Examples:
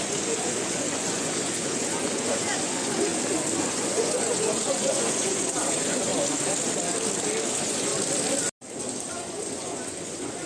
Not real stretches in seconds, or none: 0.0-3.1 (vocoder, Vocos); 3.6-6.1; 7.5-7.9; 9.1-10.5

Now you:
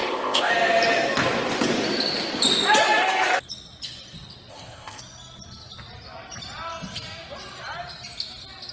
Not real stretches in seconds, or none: 0.0-0.5 (codec, ZipCodec); 4.5-5.0

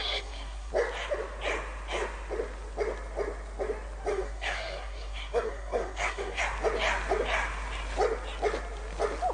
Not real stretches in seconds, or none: 0.0-0.7 (codec, SNAC); 4.1-6.4

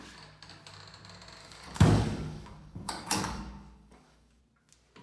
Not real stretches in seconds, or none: 1.4-4.4 (codec, DAC)

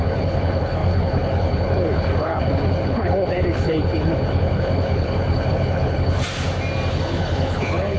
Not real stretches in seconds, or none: 0.0-6.2 (codec, HILCodec); 6.9-8.0